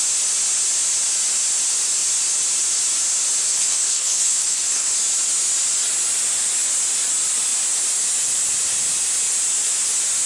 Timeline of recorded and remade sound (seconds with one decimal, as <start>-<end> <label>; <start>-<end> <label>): 0.0-3.5 recorded; 3.5-4.9 remade; 4.9-10.3 recorded